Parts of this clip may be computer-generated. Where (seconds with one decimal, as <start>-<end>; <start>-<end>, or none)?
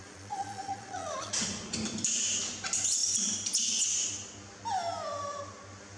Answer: 0.0-1.3